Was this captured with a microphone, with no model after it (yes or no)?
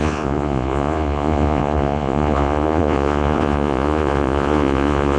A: no